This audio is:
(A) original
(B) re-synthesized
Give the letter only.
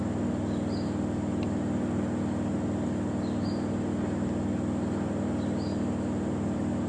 A